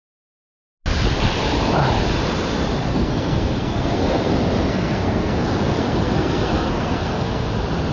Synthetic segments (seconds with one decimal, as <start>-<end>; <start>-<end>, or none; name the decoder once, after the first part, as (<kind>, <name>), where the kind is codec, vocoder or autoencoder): 2.9-4.3 (codec, SNAC); 4.7-7.5